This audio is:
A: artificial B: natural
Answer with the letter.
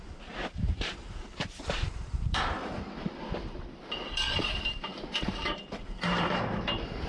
A